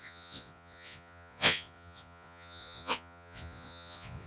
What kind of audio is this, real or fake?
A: fake